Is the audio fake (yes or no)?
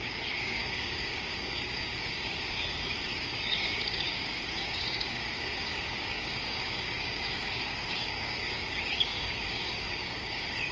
yes